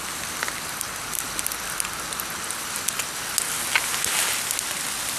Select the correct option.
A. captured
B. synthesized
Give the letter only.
A